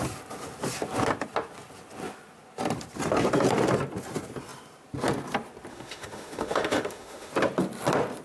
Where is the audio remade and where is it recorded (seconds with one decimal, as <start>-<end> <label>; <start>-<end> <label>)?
0.0-5.7 recorded; 5.7-7.3 remade; 7.3-8.2 recorded